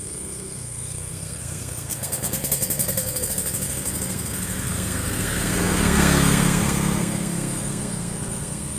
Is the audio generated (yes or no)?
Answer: yes